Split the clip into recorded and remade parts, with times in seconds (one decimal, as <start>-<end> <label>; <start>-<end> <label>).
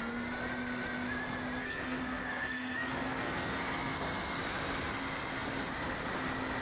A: 0.0-1.6 recorded; 1.6-4.4 remade; 4.4-6.6 recorded